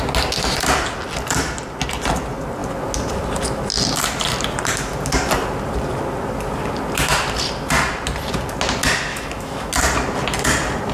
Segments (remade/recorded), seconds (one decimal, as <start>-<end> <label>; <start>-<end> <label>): 0.0-9.1 recorded; 9.1-9.7 remade; 9.7-10.9 recorded